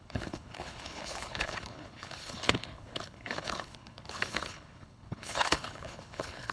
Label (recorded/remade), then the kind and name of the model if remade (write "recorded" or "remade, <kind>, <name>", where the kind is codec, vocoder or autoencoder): remade, codec, HILCodec